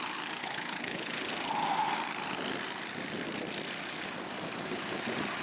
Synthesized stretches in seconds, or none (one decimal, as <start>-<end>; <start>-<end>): 0.4-1.3

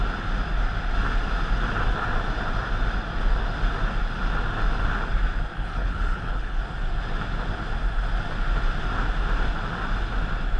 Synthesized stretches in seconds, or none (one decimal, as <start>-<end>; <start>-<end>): 5.5-6.6